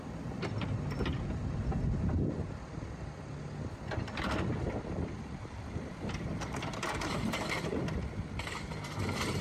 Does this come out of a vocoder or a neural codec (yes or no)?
yes